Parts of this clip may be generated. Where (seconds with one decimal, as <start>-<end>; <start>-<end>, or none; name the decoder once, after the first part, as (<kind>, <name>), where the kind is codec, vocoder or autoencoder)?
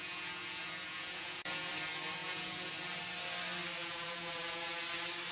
0.0-1.7 (vocoder, Vocos); 2.2-2.7; 3.8-4.7